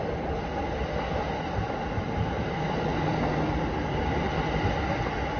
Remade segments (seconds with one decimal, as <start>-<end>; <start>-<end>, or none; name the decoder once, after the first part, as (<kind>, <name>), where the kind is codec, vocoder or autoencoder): 3.1-4.0 (vocoder, BigVGAN v2)